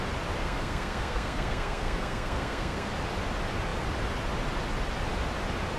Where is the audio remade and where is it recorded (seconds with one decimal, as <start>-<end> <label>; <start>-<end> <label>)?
0.0-0.4 recorded; 0.4-2.9 remade; 2.9-5.8 recorded